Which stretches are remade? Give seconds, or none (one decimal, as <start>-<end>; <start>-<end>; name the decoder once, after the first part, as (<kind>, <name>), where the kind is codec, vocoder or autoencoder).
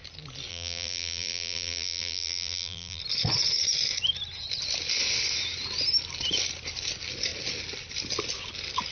0.5-3.0 (vocoder, BigVGAN v2)